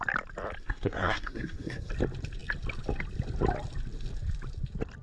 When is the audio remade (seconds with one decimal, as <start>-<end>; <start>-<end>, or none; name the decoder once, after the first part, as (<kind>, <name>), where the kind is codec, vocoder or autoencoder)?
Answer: 0.6-1.9 (codec, SNAC)